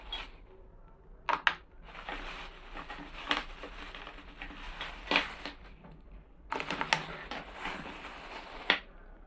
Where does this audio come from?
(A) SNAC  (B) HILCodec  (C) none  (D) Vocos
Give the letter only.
C